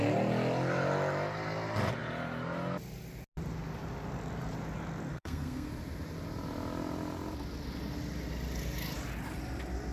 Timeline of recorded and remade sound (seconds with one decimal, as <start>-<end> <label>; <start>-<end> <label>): 0.0-5.1 recorded; 5.1-5.7 remade; 5.7-9.9 recorded